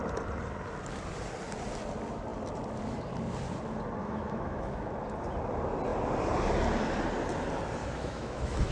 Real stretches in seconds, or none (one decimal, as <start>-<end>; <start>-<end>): 0.0-4.0; 4.9-7.8